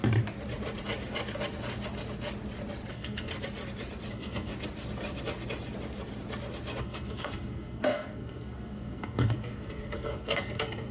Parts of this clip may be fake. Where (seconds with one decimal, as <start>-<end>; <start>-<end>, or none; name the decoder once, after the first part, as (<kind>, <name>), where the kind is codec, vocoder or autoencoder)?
2.9-3.3 (codec, SNAC); 4.1-4.5; 6.8-10.9